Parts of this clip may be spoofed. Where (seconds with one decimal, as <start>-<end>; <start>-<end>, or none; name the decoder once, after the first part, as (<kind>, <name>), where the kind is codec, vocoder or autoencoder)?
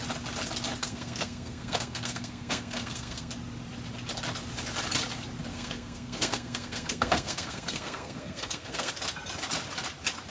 0.8-3.3 (codec, SNAC); 5.5-8.9